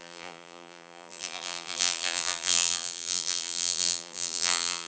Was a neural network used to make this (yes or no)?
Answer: yes